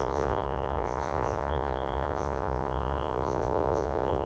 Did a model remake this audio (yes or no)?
yes